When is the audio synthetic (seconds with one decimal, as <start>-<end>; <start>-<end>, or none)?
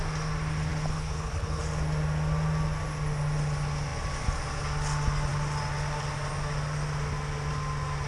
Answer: 0.7-1.6